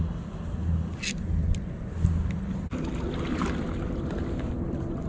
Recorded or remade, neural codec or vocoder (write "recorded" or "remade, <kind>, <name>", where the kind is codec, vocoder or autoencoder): recorded